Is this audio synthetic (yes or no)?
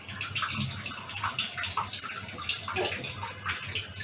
no